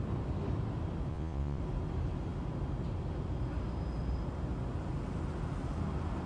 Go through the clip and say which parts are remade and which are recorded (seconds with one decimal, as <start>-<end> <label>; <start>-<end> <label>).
0.0-1.1 recorded; 1.1-1.6 remade; 1.6-6.3 recorded